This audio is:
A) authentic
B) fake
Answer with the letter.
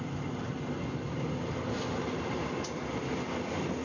A